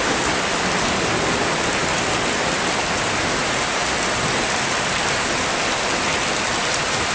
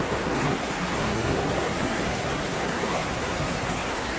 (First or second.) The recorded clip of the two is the first